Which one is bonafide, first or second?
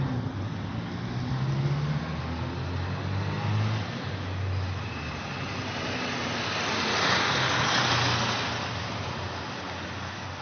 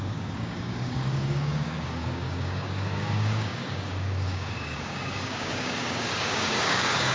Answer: first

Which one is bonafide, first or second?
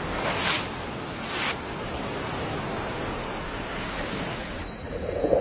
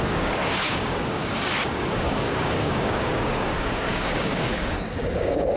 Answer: first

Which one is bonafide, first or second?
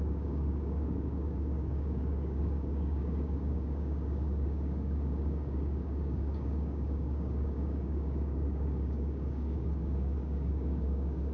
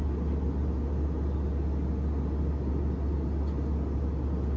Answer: second